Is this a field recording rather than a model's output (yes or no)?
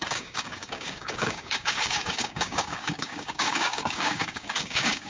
no